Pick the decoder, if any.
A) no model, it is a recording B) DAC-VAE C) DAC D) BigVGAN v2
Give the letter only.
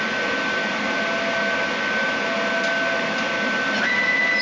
A